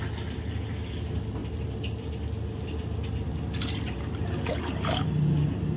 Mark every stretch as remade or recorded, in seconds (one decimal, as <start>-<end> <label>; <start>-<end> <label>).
0.0-5.8 recorded